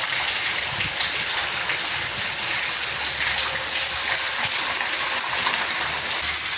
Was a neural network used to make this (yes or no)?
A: no